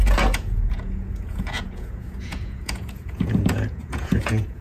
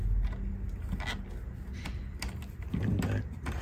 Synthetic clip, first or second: first